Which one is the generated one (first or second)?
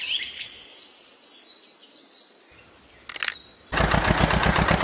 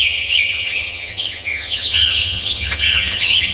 second